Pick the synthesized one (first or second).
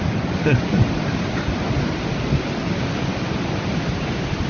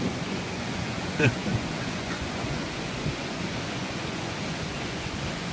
second